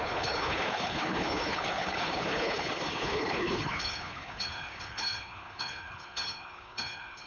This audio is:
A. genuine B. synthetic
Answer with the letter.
B